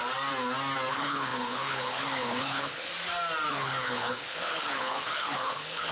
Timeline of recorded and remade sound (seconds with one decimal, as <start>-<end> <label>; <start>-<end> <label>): 0.0-0.9 recorded; 0.9-2.9 remade; 2.9-3.5 recorded; 3.5-5.9 remade